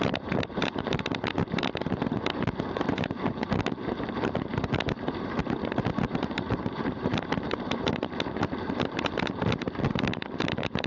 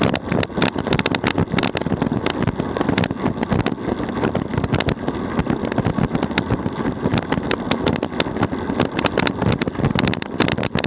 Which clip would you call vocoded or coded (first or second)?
first